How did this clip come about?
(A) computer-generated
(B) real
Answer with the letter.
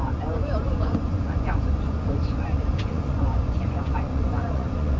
A